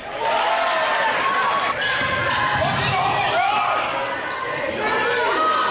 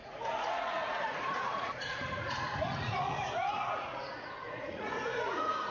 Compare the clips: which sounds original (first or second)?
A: first